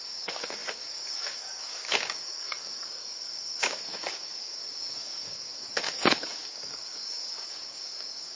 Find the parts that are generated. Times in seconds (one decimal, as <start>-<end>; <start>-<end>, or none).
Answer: 0.0-8.4